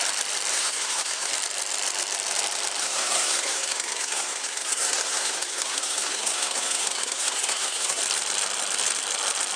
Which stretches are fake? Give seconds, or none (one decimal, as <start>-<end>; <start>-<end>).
0.5-1.3; 2.8-8.0